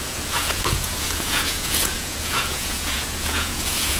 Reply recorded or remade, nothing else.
remade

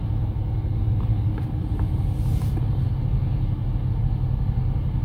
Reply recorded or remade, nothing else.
recorded